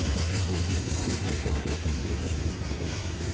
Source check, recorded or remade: remade